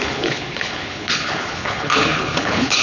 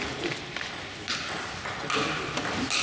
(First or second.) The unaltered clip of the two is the second